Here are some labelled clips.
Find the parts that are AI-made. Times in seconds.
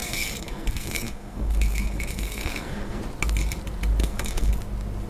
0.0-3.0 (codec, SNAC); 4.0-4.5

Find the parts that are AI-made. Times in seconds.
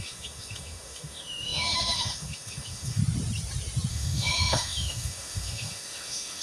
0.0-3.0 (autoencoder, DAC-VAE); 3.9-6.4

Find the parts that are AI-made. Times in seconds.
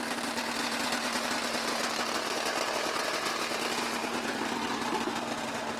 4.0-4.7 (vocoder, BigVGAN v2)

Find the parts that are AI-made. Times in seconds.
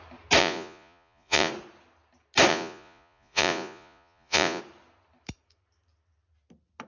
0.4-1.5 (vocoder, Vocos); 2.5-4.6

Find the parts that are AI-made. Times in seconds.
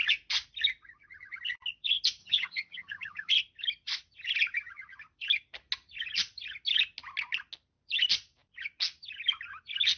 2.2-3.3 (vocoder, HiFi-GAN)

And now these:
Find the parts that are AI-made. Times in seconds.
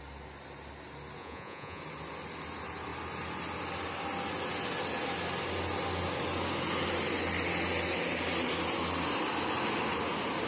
1.2-1.8 (vocoder, Vocos)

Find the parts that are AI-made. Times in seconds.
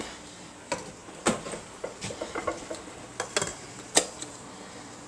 3.5-4.5 (vocoder, BigVGAN v2)